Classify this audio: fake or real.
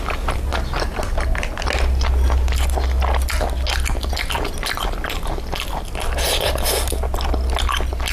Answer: real